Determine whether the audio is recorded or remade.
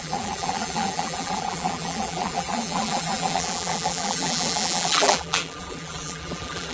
remade